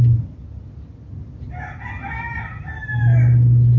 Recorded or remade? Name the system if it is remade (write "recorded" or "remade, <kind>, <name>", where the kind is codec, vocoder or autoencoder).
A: recorded